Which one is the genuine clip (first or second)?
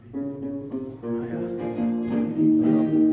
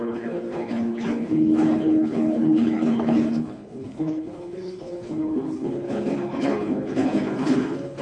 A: first